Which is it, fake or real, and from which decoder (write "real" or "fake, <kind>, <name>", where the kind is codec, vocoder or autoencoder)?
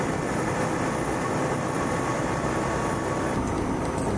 real